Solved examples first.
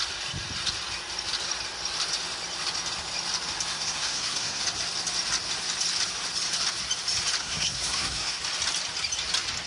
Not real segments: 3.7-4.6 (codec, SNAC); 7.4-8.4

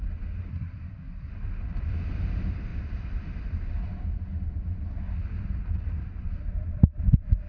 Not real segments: 0.5-1.3 (codec, SNAC)

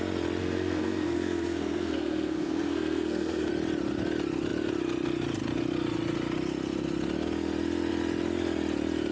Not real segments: 0.4-3.5 (codec, SNAC)